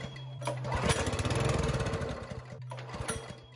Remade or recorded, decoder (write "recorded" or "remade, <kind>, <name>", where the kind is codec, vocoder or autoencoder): recorded